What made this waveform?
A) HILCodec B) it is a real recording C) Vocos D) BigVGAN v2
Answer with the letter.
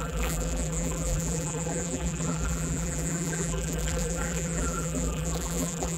D